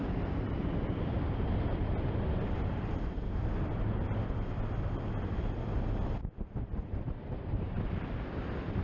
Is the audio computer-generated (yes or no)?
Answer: yes